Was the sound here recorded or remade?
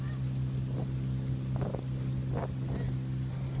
recorded